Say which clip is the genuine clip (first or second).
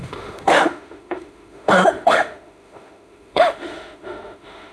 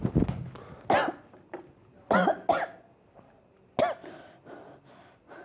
second